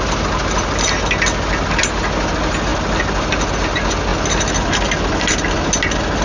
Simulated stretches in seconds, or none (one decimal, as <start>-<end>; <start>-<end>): none